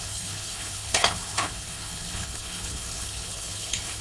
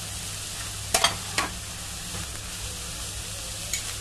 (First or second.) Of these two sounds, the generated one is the first